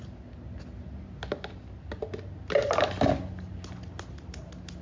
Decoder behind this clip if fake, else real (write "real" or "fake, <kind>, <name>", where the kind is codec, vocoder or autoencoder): real